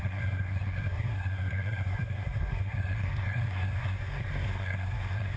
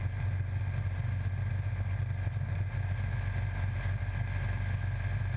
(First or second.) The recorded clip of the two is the second